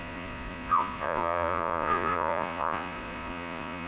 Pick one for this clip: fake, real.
fake